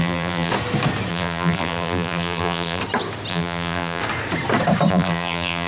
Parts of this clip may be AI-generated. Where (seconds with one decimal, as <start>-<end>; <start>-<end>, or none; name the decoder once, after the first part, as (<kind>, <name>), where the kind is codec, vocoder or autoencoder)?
0.0-0.5 (vocoder, BigVGAN v2); 1.1-2.8; 3.3-4.0; 4.9-5.7